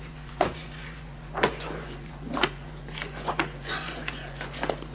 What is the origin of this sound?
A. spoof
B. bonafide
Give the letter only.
A